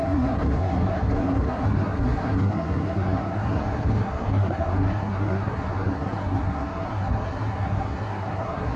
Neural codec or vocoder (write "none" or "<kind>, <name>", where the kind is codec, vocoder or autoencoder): codec, SNAC